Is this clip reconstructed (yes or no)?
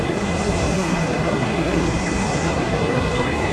yes